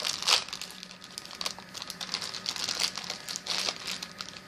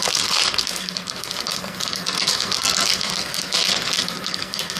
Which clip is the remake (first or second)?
second